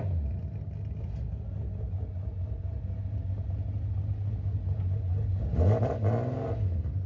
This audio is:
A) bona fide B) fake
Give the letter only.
A